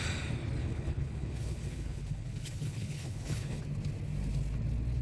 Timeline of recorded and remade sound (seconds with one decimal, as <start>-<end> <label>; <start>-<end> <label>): 0.0-0.6 recorded; 0.6-3.6 remade; 3.6-5.0 recorded